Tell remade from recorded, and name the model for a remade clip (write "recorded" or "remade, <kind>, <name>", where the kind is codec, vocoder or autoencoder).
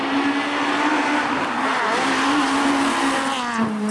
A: recorded